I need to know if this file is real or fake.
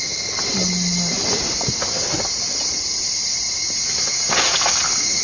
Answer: real